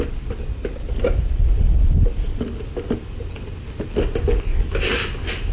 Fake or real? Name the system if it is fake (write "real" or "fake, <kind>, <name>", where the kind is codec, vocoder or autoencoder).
real